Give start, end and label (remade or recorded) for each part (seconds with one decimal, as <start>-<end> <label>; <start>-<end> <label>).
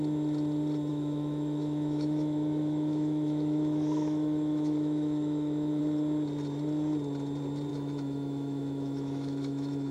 0.0-0.9 recorded; 0.9-5.8 remade; 5.8-7.7 recorded; 7.7-9.9 remade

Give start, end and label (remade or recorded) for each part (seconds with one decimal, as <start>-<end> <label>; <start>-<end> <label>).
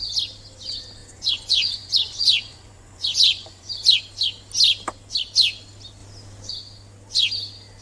0.0-1.0 recorded; 1.0-3.7 remade; 3.7-7.8 recorded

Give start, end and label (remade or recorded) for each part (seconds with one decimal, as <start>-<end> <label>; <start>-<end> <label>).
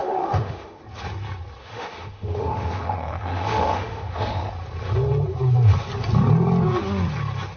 0.0-0.8 remade; 0.8-1.6 recorded; 1.6-4.5 remade; 4.5-7.6 recorded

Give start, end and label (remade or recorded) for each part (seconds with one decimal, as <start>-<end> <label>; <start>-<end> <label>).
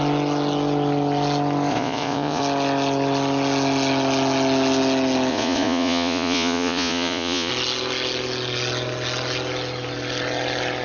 0.0-1.7 recorded; 1.7-2.4 remade; 2.4-5.3 recorded; 5.3-7.5 remade; 7.5-10.8 recorded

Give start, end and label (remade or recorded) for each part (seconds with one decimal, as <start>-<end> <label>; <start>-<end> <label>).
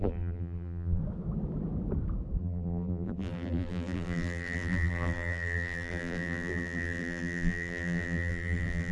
0.0-1.0 remade; 1.0-2.4 recorded; 2.4-8.9 remade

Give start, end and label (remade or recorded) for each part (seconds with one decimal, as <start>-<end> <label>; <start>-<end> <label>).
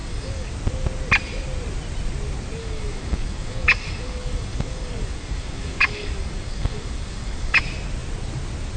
0.0-0.5 remade; 0.5-2.6 recorded; 2.6-7.6 remade; 7.6-8.8 recorded